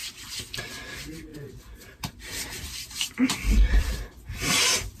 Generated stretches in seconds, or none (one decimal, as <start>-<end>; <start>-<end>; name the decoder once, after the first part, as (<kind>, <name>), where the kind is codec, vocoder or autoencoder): 0.0-0.8 (vocoder, BigVGAN v2); 1.3-3.9